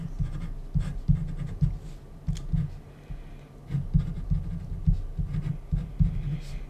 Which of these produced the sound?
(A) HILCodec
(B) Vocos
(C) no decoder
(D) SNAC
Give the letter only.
C